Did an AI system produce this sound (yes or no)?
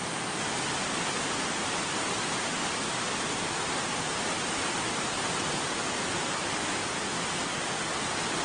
no